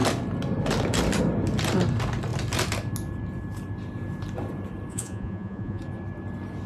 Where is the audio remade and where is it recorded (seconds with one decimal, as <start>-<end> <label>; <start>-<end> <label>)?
0.0-4.9 recorded; 4.9-5.8 remade; 5.8-6.7 recorded